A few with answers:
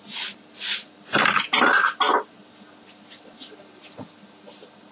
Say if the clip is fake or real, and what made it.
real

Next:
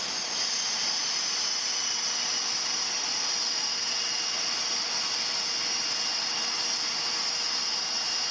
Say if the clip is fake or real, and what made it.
real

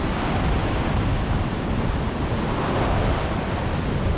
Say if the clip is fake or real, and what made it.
real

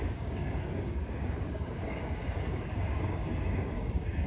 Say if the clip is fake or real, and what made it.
fake, codec, DAC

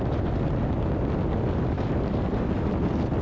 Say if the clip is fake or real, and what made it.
real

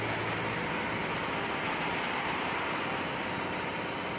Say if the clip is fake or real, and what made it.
real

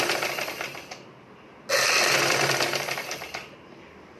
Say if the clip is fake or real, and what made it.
real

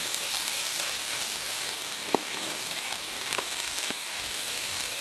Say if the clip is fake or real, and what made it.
fake, codec, DAC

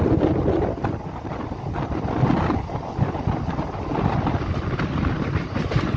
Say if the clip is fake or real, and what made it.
real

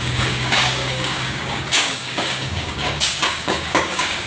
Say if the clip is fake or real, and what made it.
fake, codec, DAC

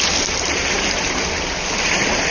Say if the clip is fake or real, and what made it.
real